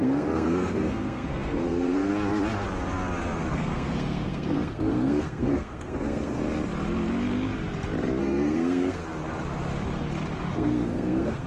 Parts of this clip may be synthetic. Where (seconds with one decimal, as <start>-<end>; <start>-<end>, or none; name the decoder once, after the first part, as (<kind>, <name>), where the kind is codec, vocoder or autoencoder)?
0.0-2.1 (codec, SNAC); 3.5-6.4; 8.2-9.0; 10.5-11.5

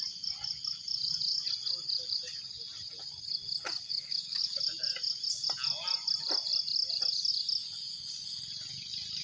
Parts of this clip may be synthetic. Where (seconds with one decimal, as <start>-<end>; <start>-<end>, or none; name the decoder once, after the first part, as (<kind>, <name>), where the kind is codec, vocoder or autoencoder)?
3.9-4.6 (autoencoder, DAC-VAE)

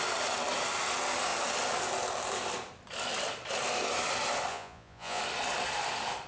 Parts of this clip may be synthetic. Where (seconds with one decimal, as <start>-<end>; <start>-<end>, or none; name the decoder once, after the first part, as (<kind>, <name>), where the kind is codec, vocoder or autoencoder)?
4.5-5.2 (vocoder, Vocos)

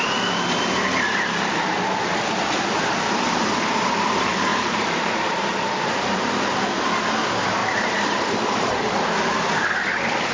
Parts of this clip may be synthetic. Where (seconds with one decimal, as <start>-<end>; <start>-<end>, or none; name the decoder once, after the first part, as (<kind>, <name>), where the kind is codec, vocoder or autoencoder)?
4.5-6.2 (vocoder, BigVGAN v2); 7.6-8.9

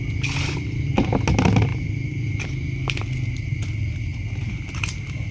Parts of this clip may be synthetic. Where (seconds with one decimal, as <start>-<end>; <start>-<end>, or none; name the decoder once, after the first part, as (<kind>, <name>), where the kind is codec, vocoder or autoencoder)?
1.7-2.4 (vocoder, BigVGAN v2)

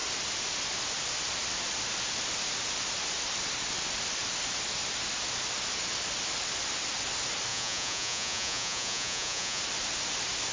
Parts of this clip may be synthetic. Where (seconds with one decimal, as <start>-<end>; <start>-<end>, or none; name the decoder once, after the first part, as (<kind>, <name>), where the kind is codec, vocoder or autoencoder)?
7.5-9.6 (vocoder, Vocos)

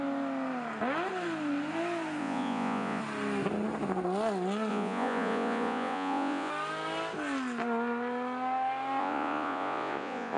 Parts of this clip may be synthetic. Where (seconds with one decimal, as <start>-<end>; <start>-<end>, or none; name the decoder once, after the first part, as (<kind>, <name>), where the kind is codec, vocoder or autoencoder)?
2.2-3.0 (vocoder, Vocos); 4.7-6.5; 9.0-10.4

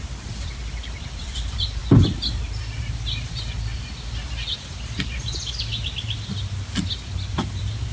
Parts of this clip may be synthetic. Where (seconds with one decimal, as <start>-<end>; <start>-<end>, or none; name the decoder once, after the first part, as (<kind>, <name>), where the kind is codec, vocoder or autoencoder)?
0.0-1.8 (vocoder, BigVGAN v2); 2.8-5.7; 7.3-7.9